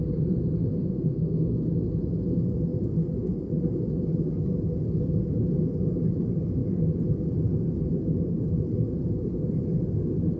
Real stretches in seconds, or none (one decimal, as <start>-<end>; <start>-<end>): 0.0-0.9; 1.5-10.4